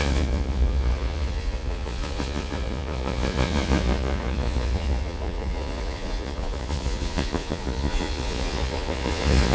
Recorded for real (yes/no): no